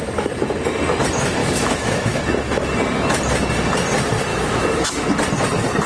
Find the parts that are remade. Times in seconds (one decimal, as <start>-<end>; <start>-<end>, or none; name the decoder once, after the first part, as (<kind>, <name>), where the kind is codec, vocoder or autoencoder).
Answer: 1.4-2.2 (autoencoder, DAC-VAE); 4.3-4.9